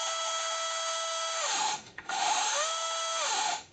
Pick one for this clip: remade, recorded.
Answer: remade